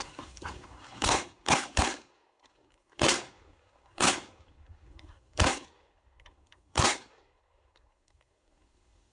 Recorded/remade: remade